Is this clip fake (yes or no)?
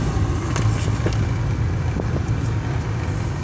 no